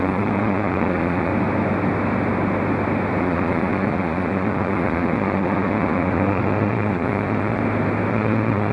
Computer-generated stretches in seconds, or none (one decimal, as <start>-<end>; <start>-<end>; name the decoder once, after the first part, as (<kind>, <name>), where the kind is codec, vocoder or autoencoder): 0.0-1.3 (vocoder, Vocos); 3.2-7.6; 8.1-8.7

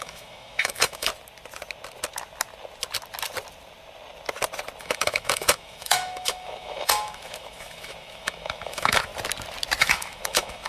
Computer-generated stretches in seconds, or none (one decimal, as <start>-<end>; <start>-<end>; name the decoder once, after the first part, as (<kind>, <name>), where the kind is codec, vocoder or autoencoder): 0.0-1.1 (autoencoder, DAC-VAE); 4.8-9.1; 9.8-10.7